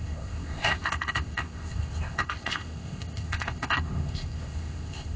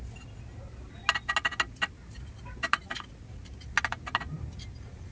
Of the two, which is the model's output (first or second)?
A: first